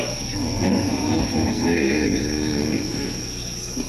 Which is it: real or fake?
fake